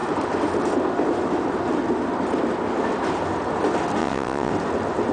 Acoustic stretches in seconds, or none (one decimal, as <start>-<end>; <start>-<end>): 0.0-4.0; 4.5-5.1

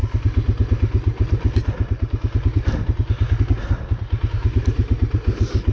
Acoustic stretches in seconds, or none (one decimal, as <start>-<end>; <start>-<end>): 0.0-5.7

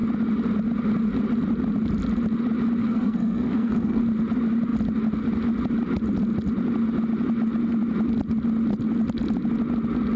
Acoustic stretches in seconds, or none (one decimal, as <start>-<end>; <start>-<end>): 0.0-2.8; 4.0-10.2

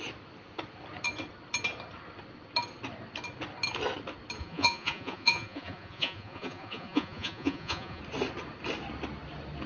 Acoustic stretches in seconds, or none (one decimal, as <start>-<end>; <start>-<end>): 0.0-4.4; 8.0-9.7

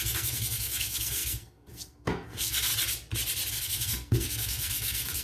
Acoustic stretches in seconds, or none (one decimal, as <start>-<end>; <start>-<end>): 2.7-3.5